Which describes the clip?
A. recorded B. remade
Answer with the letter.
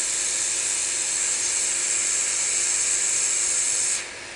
A